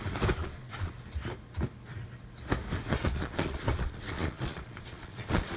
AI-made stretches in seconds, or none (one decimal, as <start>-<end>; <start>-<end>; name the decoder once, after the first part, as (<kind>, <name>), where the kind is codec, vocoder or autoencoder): 0.4-0.9 (vocoder, Vocos); 2.9-5.6